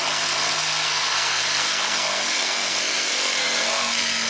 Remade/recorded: remade